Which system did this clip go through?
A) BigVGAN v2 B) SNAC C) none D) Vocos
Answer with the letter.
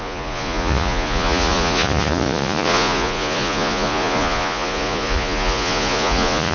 D